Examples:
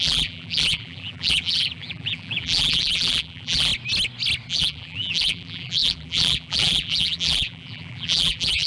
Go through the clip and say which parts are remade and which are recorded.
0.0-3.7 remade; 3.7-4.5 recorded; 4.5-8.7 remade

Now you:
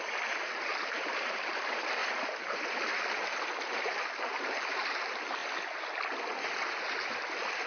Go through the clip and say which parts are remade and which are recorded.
0.0-2.0 remade; 2.0-3.7 recorded; 3.7-5.4 remade; 5.4-6.8 recorded; 6.8-7.7 remade

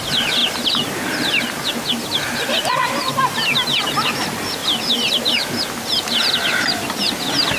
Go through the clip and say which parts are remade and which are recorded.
0.0-7.6 recorded

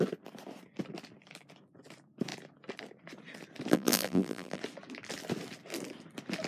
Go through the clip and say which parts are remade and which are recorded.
0.0-3.7 recorded; 3.7-4.6 remade; 4.6-6.5 recorded

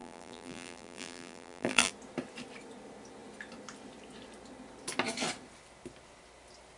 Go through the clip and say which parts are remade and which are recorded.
0.0-1.9 remade; 1.9-6.8 recorded

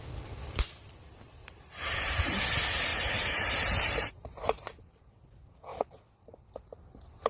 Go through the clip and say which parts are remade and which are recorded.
0.0-1.4 recorded; 1.4-2.4 remade; 2.4-2.9 recorded; 2.9-4.8 remade; 4.8-7.3 recorded

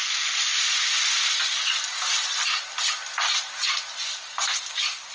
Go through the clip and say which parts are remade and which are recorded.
0.0-5.1 remade

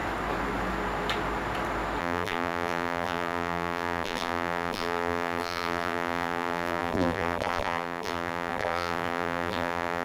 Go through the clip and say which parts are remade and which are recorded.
0.0-2.0 recorded; 2.0-10.0 remade